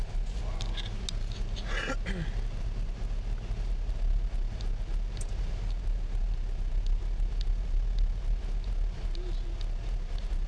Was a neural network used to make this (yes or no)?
no